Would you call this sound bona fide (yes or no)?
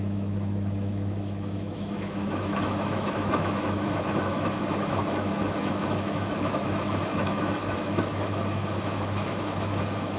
no